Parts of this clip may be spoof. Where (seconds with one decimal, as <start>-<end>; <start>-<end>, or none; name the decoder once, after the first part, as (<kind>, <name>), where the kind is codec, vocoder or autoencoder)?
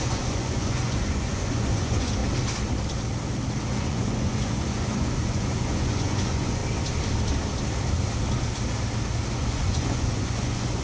0.0-2.2 (vocoder, Vocos); 3.7-6.6; 9.3-10.8